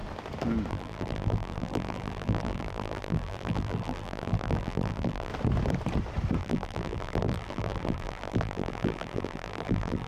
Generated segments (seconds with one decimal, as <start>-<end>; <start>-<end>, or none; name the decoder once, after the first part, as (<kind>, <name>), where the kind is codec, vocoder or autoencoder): 0.7-5.3 (vocoder, BigVGAN v2); 6.4-10.1

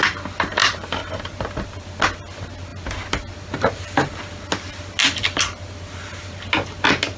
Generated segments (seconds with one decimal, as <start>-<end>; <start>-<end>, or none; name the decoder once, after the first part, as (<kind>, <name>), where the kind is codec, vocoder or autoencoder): 0.6-1.2 (vocoder, BigVGAN v2)